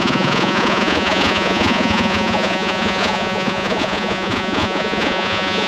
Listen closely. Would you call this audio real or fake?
fake